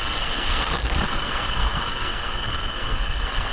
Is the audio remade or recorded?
remade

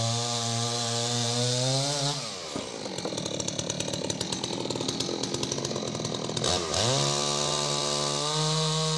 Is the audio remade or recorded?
recorded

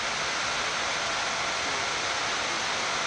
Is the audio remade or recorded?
recorded